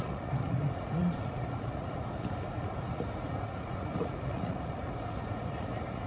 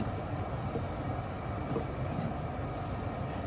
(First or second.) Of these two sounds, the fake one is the first